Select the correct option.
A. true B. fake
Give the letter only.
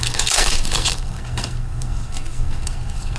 B